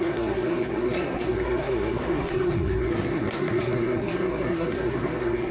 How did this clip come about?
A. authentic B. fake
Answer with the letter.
B